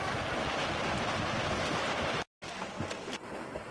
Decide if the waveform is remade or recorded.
recorded